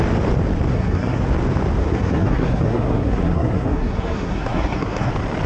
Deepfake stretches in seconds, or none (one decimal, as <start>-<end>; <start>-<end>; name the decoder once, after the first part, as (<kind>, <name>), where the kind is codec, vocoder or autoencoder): 0.7-1.2 (codec, SNAC); 1.8-5.1